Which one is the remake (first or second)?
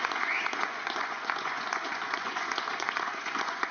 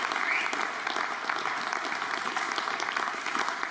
first